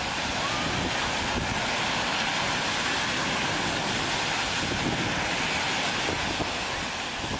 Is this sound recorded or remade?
recorded